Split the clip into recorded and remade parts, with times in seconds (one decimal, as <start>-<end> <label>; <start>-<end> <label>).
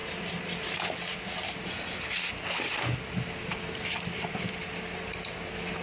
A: 0.0-5.8 recorded